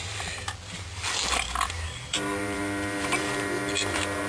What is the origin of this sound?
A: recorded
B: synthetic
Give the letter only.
B